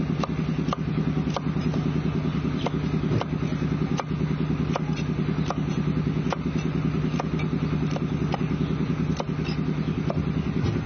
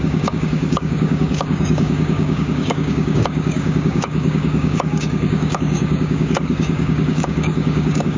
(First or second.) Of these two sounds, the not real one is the second